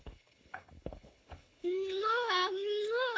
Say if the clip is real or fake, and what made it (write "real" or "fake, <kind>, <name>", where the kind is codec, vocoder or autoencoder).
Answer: fake, codec, HILCodec